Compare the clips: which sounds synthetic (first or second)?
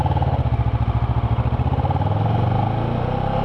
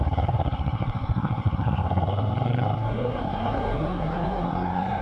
second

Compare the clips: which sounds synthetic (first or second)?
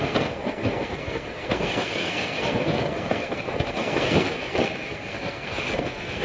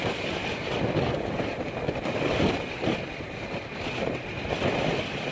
first